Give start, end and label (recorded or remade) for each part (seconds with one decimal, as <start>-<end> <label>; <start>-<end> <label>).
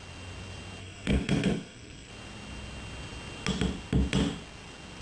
0.0-0.8 recorded; 0.8-2.1 remade; 2.1-5.0 recorded